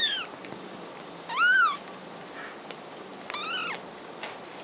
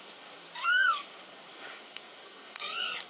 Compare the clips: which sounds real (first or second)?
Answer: first